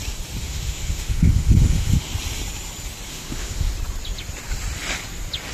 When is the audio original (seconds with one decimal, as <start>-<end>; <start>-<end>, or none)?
0.0-0.4; 2.1-3.1; 3.7-5.5